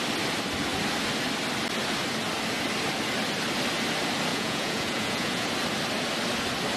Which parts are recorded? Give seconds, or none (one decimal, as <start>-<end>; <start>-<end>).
0.0-4.3; 5.5-6.8